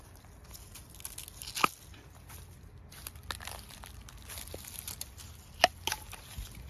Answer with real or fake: real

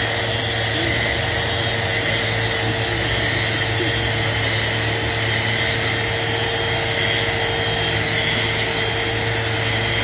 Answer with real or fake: real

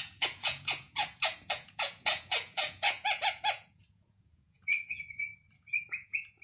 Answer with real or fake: fake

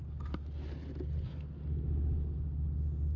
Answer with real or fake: real